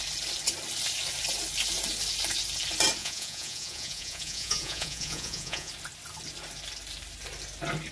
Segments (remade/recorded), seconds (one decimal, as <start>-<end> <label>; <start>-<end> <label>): 0.0-3.0 recorded; 3.0-5.7 remade; 5.7-7.9 recorded